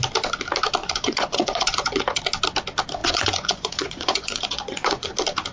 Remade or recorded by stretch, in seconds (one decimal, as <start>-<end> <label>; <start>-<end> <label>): 0.0-0.8 recorded; 0.8-2.2 remade; 2.2-3.0 recorded; 3.0-5.1 remade; 5.1-5.5 recorded